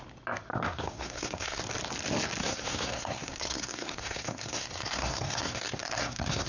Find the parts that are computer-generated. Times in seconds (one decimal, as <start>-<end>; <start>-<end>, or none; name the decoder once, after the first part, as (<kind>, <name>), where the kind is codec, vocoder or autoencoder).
0.5-1.6 (codec, SNAC); 2.4-6.5